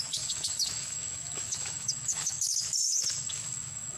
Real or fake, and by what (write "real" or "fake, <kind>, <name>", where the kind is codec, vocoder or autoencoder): fake, autoencoder, DAC-VAE